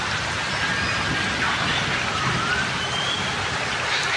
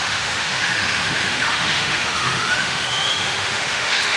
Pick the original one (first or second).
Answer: first